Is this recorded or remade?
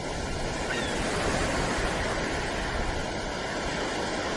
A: recorded